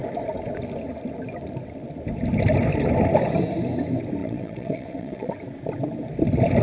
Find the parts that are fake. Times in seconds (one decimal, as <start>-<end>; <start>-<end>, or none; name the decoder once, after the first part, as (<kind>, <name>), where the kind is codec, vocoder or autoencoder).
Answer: 4.2-5.3 (vocoder, WaveNeXt)